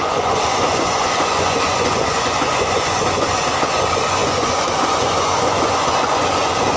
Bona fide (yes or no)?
no